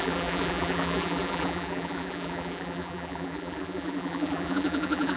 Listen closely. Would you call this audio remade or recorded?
remade